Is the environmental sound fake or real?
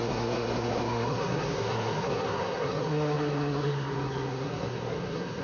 fake